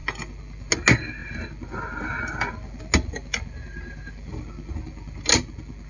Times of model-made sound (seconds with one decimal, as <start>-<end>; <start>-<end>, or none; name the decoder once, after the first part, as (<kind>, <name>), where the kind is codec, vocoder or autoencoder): none